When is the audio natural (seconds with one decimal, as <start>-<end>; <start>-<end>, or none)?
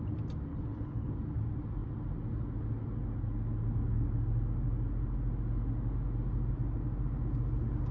0.0-0.5; 1.1-7.9